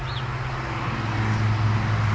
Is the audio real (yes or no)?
yes